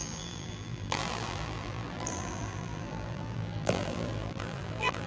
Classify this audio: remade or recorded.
remade